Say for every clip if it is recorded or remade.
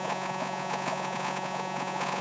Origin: remade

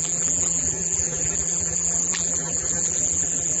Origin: remade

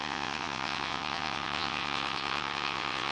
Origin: remade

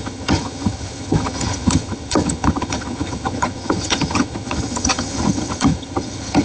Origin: remade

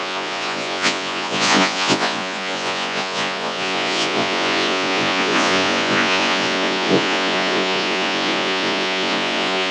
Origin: remade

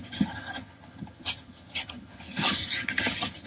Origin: remade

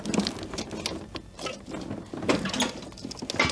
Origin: recorded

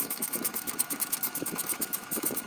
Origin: remade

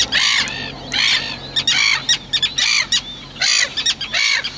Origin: recorded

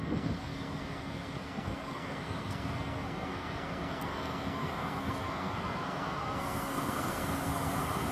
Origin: remade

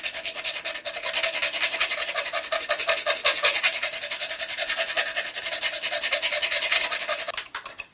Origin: recorded